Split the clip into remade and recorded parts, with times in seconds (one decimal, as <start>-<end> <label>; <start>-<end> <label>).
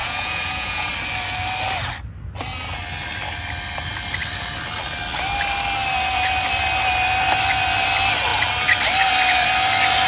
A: 0.0-0.9 remade; 0.9-10.1 recorded